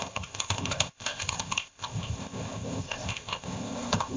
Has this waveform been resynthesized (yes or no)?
yes